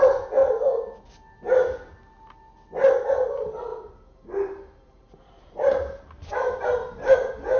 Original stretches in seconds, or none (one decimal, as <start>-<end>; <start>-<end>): 0.0-3.7; 6.3-7.6